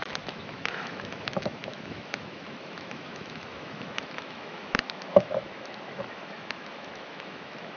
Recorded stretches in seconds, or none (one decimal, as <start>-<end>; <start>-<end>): none